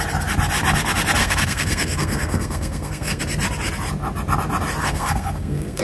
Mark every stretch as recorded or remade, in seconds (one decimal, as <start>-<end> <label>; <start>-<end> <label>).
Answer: 0.0-1.2 recorded; 1.2-3.2 remade; 3.2-4.8 recorded; 4.8-5.8 remade